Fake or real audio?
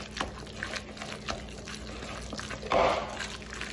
real